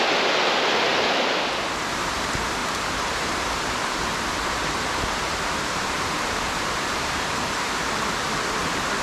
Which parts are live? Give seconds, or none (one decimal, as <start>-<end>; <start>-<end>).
0.0-2.6; 7.7-9.0